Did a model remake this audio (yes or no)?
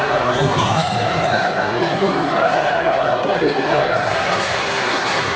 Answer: yes